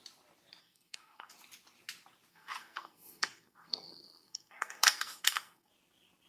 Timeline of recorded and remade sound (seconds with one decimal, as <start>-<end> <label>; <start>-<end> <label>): 0.0-0.6 recorded; 0.6-1.3 remade; 1.3-2.3 recorded; 2.3-5.7 remade; 5.7-6.3 recorded